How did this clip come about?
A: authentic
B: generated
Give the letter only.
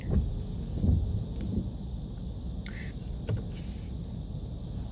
A